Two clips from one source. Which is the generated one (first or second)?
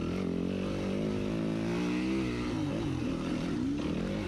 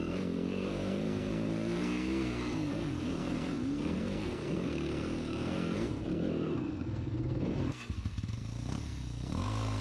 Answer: second